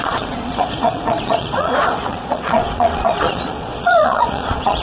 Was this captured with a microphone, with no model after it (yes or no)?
no